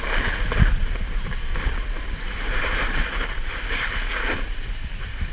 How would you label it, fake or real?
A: real